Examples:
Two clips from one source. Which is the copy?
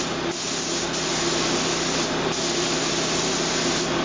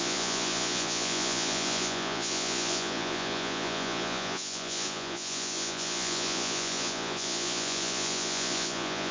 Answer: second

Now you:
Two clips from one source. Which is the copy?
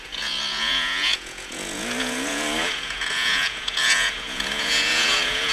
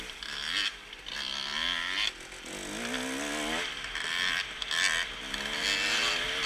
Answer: first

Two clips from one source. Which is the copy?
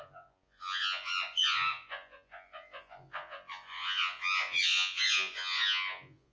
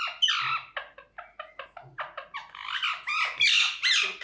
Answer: first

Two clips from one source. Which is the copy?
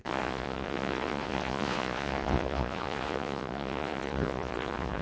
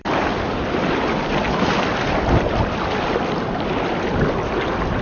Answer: first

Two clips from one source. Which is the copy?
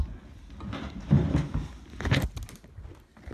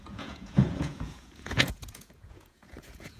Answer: second